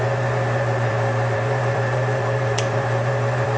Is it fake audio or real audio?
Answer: fake